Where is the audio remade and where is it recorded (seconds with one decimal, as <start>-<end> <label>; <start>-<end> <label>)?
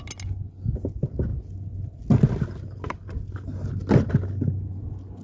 0.0-5.2 recorded